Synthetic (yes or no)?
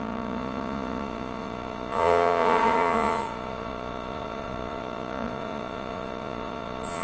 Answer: yes